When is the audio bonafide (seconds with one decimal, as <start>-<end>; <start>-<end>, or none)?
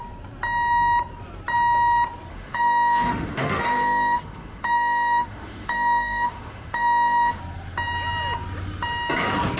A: 0.0-2.3; 7.4-9.6